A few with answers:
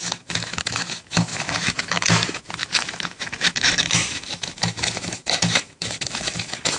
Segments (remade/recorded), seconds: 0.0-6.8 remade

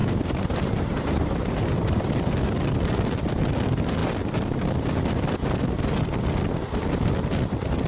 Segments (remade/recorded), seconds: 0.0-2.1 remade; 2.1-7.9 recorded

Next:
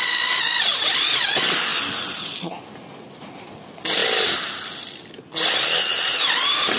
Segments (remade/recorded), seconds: 0.0-6.8 recorded

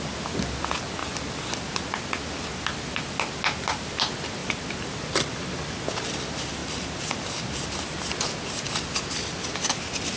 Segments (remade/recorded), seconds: 0.0-1.0 recorded; 1.0-1.6 remade; 1.6-4.4 recorded; 4.4-5.8 remade; 5.8-6.6 recorded; 6.6-7.4 remade; 7.4-10.2 recorded